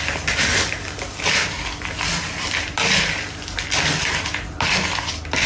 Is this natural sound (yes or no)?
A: yes